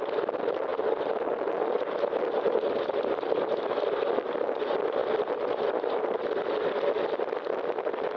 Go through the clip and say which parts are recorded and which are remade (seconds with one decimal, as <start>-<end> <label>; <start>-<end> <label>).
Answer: 0.0-8.2 recorded